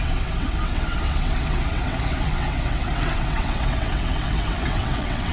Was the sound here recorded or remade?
remade